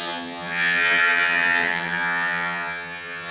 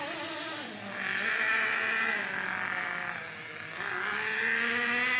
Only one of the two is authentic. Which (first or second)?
second